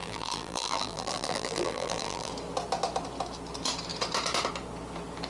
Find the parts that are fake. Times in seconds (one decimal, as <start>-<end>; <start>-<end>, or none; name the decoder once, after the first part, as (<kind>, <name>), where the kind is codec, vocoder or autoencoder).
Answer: 0.0-2.3 (vocoder, BigVGAN v2)